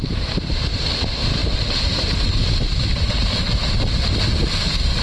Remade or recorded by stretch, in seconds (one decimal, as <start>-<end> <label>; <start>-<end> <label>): 0.0-5.0 remade